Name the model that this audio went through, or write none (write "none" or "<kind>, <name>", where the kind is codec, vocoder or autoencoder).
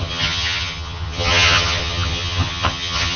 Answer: vocoder, HiFi-GAN